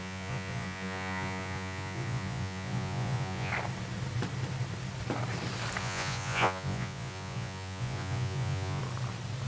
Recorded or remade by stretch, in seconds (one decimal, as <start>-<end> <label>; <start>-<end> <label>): 0.0-3.5 remade; 3.5-5.8 recorded; 5.8-8.8 remade; 8.8-9.5 recorded